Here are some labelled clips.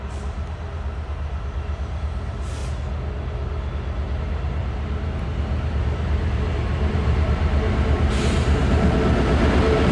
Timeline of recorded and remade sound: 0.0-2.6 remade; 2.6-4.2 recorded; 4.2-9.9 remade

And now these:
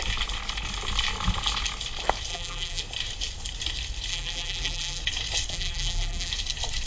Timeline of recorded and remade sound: 0.0-2.3 recorded; 2.3-2.8 remade; 2.8-4.1 recorded; 4.1-5.0 remade; 5.0-5.5 recorded; 5.5-6.3 remade; 6.3-6.9 recorded

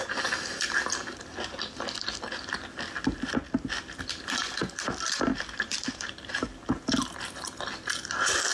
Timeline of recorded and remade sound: 0.0-4.6 recorded; 4.6-6.1 remade; 6.1-8.5 recorded

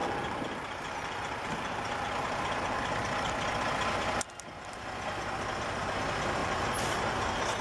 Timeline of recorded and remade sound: 0.0-3.3 remade; 3.3-6.4 recorded; 6.4-7.0 remade; 7.0-7.6 recorded